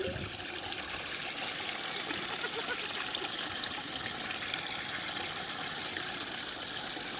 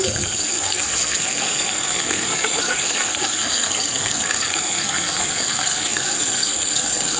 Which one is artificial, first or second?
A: second